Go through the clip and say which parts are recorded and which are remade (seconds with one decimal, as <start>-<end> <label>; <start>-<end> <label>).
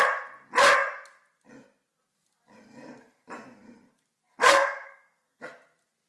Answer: 0.0-4.4 recorded; 4.4-5.4 remade; 5.4-6.1 recorded